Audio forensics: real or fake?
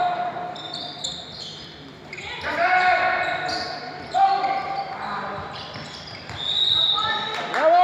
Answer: fake